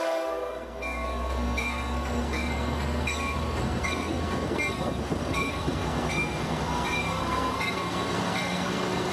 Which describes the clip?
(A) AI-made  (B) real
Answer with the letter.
A